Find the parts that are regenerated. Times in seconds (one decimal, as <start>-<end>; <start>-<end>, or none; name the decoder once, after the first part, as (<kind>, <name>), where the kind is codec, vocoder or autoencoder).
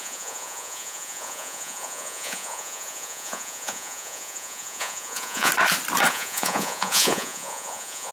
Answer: 0.0-5.5 (vocoder, Vocos); 6.1-8.1